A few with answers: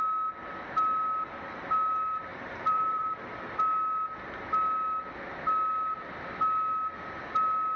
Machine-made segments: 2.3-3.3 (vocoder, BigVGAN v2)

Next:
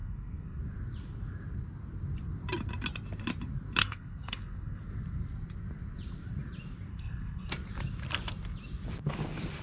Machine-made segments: 0.0-0.6 (codec, SNAC); 3.8-4.8; 6.9-7.5

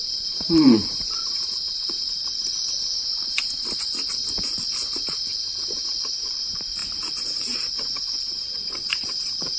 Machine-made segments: 0.0-2.9 (vocoder, BigVGAN v2); 6.1-9.6